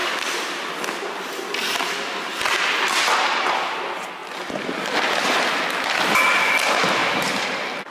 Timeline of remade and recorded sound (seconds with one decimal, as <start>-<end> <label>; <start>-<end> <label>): 0.0-7.0 recorded; 7.0-7.9 remade